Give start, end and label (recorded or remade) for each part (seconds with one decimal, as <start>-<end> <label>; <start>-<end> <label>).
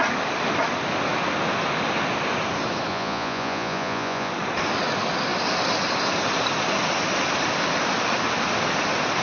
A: 0.0-2.9 recorded; 2.9-4.3 remade; 4.3-9.2 recorded